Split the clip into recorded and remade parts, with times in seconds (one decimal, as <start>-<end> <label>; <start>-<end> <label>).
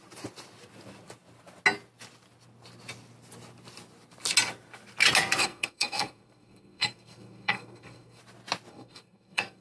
0.0-5.4 recorded; 5.4-8.2 remade; 8.2-8.7 recorded; 8.7-9.6 remade